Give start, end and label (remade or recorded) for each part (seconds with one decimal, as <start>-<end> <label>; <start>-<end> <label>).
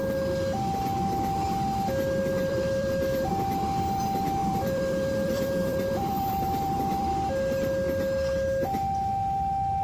0.0-2.4 recorded; 2.4-3.3 remade; 3.3-4.4 recorded; 4.4-7.1 remade; 7.1-9.8 recorded